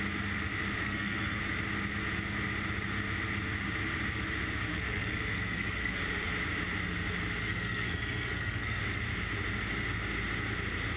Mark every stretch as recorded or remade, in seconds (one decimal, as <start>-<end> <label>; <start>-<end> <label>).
0.0-0.8 recorded; 0.8-1.4 remade; 1.4-4.7 recorded; 4.7-6.0 remade; 6.0-7.4 recorded; 7.4-8.8 remade; 8.8-11.0 recorded